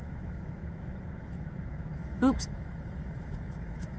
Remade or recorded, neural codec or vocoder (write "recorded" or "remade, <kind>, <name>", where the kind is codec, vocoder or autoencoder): remade, autoencoder, DAC-VAE